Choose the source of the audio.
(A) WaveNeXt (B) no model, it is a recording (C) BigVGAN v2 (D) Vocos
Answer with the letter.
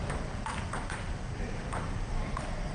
C